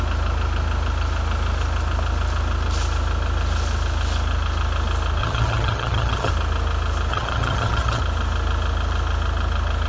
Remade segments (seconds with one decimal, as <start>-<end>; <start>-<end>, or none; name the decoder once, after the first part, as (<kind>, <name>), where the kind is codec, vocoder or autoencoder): 5.2-6.3 (vocoder, HiFi-GAN); 7.1-8.0